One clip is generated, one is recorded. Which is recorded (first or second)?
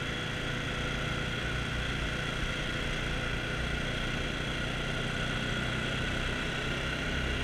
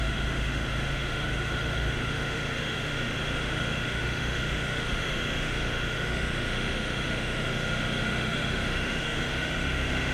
first